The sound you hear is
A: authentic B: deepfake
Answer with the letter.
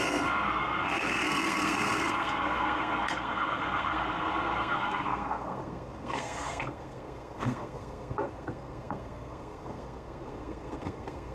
B